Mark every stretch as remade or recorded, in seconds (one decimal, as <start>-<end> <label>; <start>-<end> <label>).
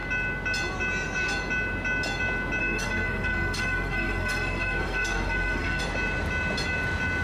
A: 0.0-2.6 recorded; 2.6-5.8 remade; 5.8-7.2 recorded